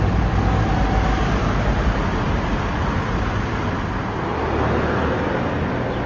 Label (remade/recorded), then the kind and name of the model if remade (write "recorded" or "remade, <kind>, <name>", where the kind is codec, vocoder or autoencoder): recorded